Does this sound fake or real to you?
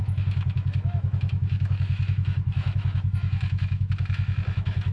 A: fake